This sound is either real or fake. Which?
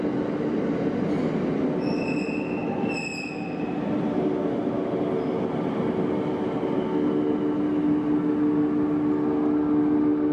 real